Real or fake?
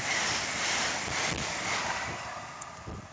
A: real